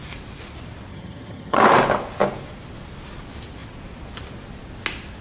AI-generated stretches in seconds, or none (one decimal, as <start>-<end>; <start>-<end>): 0.9-1.6